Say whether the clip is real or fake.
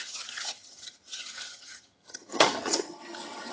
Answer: fake